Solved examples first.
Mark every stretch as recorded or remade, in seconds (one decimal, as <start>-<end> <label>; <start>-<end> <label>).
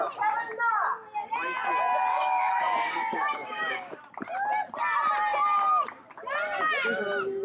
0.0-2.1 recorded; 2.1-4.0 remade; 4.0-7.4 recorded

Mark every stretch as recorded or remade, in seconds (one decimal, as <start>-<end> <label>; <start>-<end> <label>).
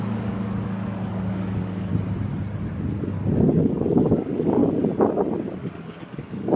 0.0-1.9 remade; 1.9-3.5 recorded; 3.5-4.6 remade; 4.6-5.6 recorded; 5.6-6.6 remade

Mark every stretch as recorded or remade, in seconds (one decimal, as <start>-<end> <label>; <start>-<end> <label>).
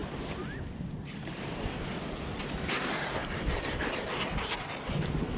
0.0-5.4 recorded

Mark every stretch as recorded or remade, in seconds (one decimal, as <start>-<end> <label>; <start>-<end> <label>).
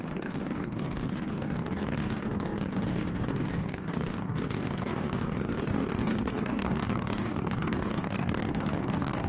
0.0-9.3 remade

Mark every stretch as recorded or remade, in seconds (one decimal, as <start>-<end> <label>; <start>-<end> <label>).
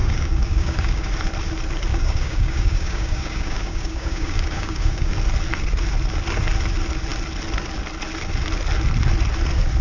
0.0-1.1 remade; 1.1-1.9 recorded; 1.9-5.1 remade; 5.1-9.8 recorded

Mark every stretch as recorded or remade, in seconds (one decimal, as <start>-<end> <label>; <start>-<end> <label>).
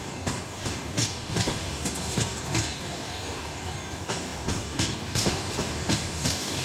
0.0-6.6 remade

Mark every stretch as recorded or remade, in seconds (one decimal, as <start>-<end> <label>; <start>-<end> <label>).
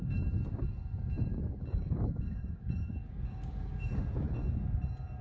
0.0-1.3 recorded; 1.3-4.4 remade; 4.4-5.2 recorded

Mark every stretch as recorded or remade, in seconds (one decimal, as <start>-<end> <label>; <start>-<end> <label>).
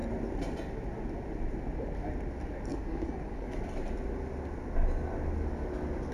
0.0-2.7 recorded; 2.7-3.5 remade; 3.5-6.1 recorded